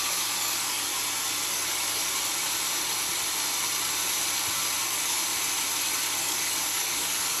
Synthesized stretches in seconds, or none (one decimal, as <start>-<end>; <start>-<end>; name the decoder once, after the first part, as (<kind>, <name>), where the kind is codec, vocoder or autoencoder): 0.0-0.9 (codec, DAC); 1.5-2.0; 4.8-5.3; 6.2-7.4